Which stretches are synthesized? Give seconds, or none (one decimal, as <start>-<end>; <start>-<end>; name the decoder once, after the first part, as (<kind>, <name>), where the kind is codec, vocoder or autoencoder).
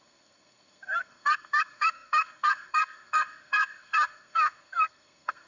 0.0-5.5 (codec, SNAC)